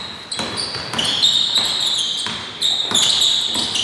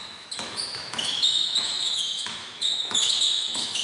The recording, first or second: first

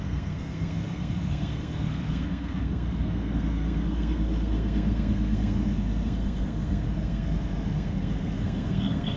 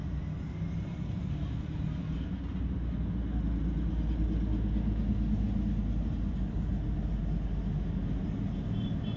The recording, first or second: second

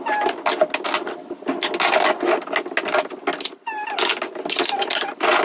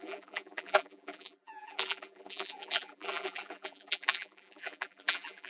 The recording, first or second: first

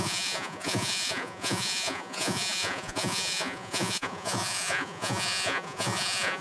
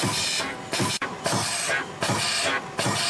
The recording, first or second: second